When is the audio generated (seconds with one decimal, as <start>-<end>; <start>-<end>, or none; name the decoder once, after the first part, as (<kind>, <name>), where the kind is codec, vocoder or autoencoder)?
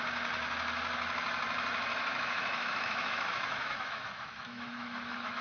1.9-5.4 (autoencoder, DAC-VAE)